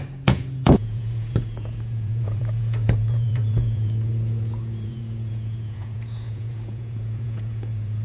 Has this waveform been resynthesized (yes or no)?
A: yes